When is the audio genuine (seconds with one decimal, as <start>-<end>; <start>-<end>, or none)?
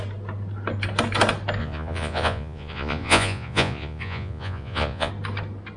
0.0-1.6; 5.1-5.8